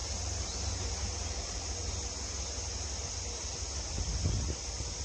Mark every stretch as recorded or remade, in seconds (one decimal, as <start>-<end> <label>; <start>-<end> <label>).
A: 0.0-1.7 remade; 1.7-5.0 recorded